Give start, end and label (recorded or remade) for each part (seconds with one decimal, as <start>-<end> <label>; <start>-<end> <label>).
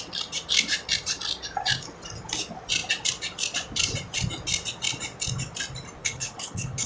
0.0-6.0 recorded; 6.0-6.9 remade